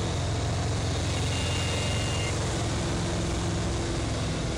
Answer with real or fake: real